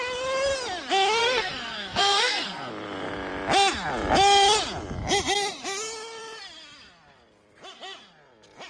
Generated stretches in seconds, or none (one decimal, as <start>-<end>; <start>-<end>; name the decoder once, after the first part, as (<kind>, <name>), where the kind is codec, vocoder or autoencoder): 1.2-2.7 (codec, SNAC)